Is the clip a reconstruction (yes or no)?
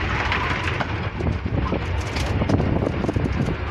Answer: no